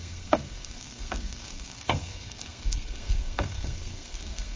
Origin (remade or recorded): remade